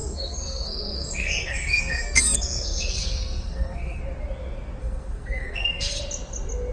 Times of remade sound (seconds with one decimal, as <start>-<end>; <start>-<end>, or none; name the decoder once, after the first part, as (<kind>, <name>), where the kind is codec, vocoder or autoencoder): 0.0-4.0 (codec, SNAC); 4.8-6.0

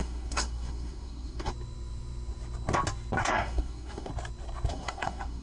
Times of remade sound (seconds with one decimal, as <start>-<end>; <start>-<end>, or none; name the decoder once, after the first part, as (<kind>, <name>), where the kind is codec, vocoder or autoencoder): 0.0-1.5 (codec, SNAC); 3.2-4.1; 4.7-5.4

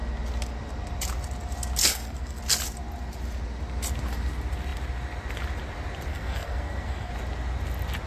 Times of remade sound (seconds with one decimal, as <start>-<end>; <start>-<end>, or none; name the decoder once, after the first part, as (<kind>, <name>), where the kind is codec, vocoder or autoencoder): 1.8-2.4 (codec, SNAC); 6.1-7.1

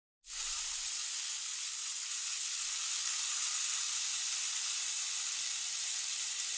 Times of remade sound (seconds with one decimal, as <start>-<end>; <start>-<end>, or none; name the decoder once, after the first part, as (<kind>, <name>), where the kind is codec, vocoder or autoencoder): none

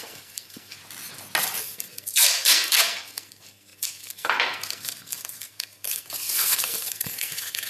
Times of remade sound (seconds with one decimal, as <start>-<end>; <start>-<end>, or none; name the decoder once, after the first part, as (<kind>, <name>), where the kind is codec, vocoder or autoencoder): 0.0-0.8 (codec, SNAC); 1.6-7.7

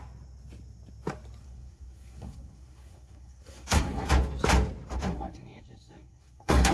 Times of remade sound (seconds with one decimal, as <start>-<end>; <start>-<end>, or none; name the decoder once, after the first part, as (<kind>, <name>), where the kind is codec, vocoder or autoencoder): 1.4-4.1 (codec, SNAC); 5.1-6.7

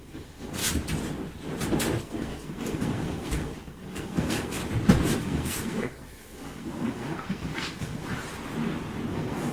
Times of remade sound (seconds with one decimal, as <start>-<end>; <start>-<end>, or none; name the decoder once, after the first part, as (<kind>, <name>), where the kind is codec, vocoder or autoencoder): 0.0-0.6 (codec, SNAC); 2.0-4.6; 5.2-8.0; 9.1-9.5